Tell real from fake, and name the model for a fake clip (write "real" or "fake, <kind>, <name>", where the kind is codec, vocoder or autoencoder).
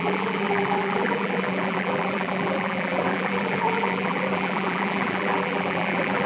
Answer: fake, vocoder, BigVGAN v2